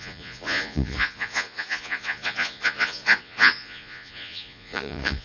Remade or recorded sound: remade